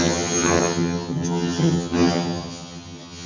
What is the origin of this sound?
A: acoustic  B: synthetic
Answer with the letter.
B